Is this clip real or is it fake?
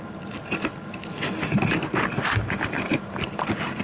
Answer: real